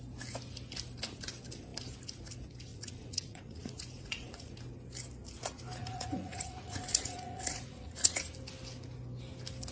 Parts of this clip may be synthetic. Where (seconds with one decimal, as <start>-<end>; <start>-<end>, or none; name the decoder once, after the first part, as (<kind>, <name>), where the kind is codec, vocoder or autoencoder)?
2.7-4.5 (vocoder, Vocos); 5.8-8.2